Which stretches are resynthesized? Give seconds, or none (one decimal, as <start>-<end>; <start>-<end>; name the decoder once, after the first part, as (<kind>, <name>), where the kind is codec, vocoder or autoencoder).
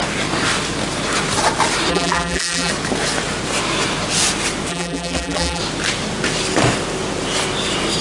1.9-2.7 (vocoder, BigVGAN v2); 4.7-5.6